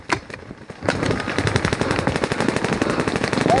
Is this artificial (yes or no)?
no